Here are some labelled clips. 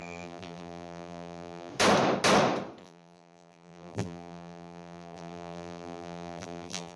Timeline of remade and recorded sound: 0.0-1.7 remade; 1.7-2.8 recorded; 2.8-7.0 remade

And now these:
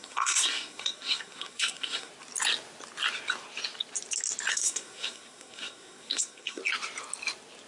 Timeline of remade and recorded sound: 0.0-2.1 remade; 2.1-4.5 recorded; 4.5-6.6 remade; 6.6-7.7 recorded